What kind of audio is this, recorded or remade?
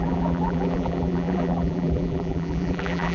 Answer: remade